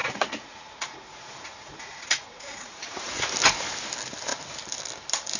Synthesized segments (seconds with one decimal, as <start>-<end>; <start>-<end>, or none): 0.0-3.2